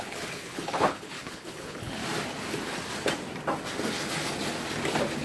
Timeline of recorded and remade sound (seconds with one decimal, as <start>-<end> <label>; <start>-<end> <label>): 0.0-2.0 remade; 2.0-5.2 recorded